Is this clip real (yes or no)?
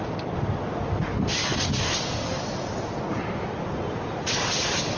yes